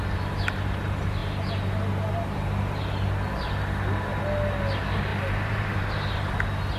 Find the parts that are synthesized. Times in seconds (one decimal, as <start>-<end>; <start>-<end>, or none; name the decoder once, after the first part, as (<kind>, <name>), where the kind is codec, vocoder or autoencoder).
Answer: 5.1-6.3 (vocoder, BigVGAN v2)